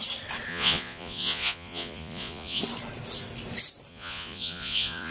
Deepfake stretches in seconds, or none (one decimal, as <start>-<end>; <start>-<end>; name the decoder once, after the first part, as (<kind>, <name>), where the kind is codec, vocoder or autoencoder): 0.5-2.6 (vocoder, Vocos); 3.9-5.1